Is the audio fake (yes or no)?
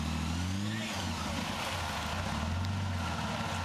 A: no